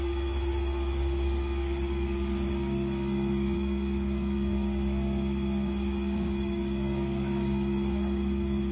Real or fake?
fake